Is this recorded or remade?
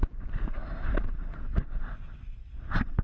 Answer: recorded